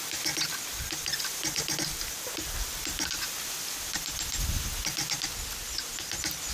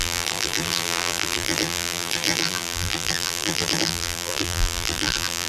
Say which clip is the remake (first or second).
second